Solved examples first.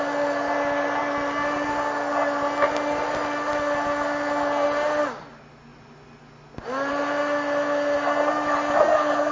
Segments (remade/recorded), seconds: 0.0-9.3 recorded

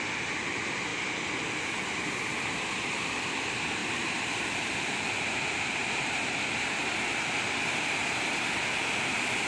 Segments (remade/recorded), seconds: 0.0-0.9 recorded; 0.9-1.8 remade; 1.8-2.3 recorded; 2.3-3.1 remade; 3.1-3.8 recorded; 3.8-8.9 remade; 8.9-9.5 recorded

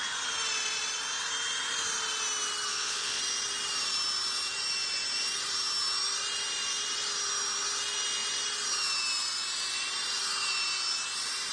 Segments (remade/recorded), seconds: 0.0-2.7 recorded; 2.7-3.2 remade; 3.2-11.5 recorded

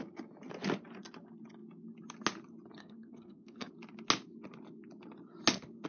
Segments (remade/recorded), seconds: 0.0-2.8 recorded; 2.8-3.7 remade; 3.7-5.9 recorded

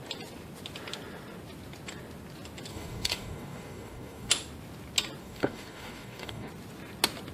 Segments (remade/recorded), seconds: 0.0-2.7 recorded; 2.7-4.3 remade; 4.3-5.2 recorded; 5.2-6.5 remade; 6.5-7.3 recorded

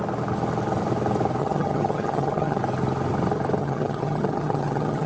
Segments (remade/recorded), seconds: 0.0-1.4 recorded; 1.4-2.6 remade; 2.6-3.6 recorded; 3.6-5.1 remade

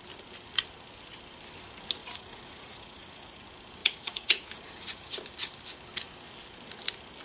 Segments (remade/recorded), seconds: 0.0-2.0 recorded; 2.0-3.4 remade; 3.4-3.8 recorded; 3.8-5.1 remade; 5.1-7.2 recorded

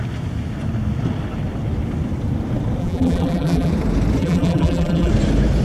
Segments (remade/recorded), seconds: 0.0-2.8 recorded; 2.8-3.7 remade; 3.7-4.2 recorded; 4.2-5.1 remade; 5.1-5.6 recorded